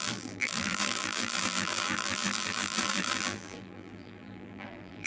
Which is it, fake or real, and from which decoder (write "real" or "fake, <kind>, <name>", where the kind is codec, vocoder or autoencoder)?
fake, vocoder, BigVGAN v2